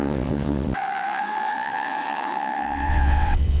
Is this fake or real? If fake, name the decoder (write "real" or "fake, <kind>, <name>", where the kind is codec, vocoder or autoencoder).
fake, vocoder, WaveNeXt